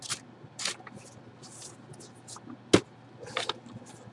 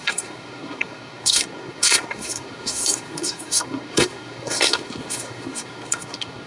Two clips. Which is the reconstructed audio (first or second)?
second